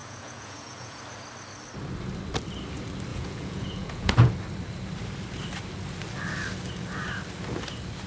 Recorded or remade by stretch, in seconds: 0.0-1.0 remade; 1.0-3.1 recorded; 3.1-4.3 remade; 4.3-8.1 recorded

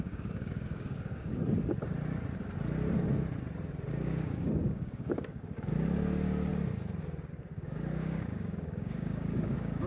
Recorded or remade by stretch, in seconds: 0.0-1.4 remade; 1.4-3.9 recorded; 3.9-6.5 remade; 6.5-7.3 recorded; 7.3-9.9 remade

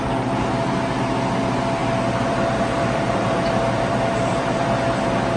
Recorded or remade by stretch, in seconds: 0.0-1.8 recorded; 1.8-5.0 remade; 5.0-5.4 recorded

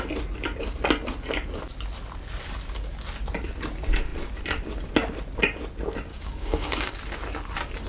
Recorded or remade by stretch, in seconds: 0.0-6.1 recorded; 6.1-6.9 remade; 6.9-7.9 recorded